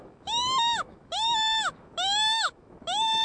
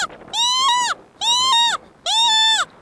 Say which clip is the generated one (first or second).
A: first